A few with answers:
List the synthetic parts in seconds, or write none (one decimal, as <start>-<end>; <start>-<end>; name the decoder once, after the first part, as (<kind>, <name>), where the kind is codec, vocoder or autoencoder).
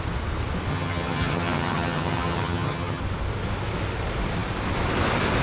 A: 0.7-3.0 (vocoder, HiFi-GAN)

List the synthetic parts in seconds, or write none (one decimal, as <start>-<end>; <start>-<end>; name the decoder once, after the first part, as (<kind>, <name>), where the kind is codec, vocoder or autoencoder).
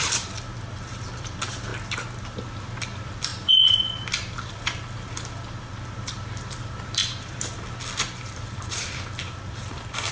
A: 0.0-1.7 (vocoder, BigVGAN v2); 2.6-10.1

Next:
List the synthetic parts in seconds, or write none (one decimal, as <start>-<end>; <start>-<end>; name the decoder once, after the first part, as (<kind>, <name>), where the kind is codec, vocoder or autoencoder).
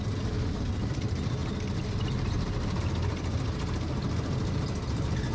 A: none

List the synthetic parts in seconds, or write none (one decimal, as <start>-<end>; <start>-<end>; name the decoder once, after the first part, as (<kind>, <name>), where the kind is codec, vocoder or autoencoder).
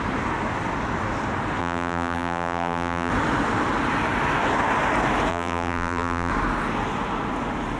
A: 1.6-3.1 (vocoder, BigVGAN v2); 5.3-6.3